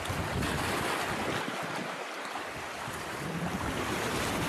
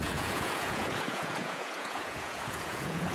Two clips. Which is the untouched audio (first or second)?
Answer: first